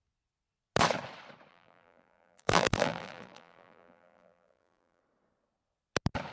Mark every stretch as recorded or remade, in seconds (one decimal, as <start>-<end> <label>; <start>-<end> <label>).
0.0-1.5 recorded; 1.5-5.0 remade; 5.0-6.3 recorded